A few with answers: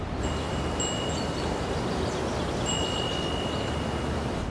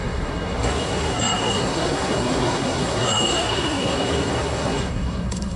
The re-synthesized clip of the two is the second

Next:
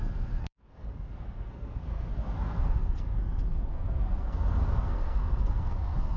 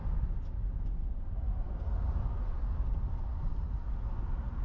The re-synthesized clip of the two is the first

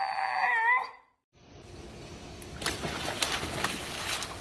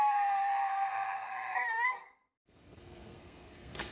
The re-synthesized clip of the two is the second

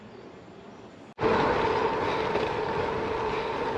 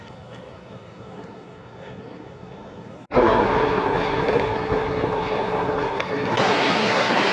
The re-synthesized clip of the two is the second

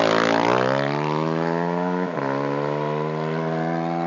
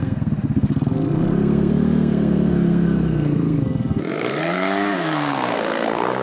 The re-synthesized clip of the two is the second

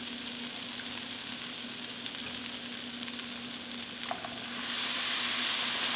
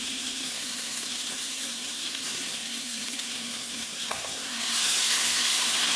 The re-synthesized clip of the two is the second